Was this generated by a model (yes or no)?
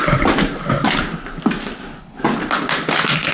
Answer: no